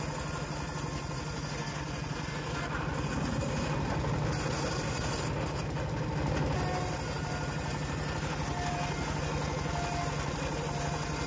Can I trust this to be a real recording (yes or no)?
yes